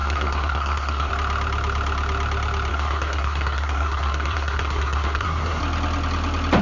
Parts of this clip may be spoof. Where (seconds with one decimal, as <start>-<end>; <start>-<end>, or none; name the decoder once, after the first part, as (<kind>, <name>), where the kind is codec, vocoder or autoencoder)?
0.0-1.1 (codec, SNAC); 2.7-5.6